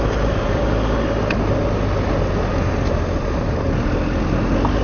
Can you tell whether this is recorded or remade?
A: recorded